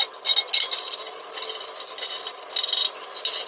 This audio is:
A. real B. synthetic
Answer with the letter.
A